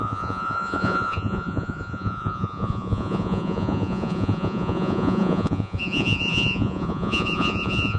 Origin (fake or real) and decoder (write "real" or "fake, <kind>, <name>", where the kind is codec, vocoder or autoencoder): fake, vocoder, Vocos